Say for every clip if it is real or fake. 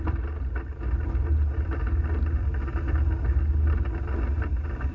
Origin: real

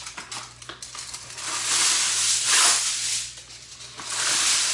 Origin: real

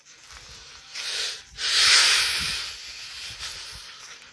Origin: real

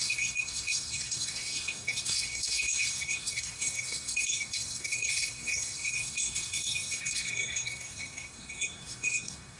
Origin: fake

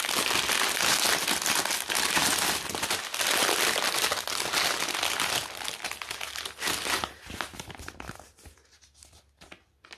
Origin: real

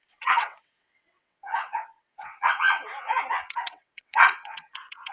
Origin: fake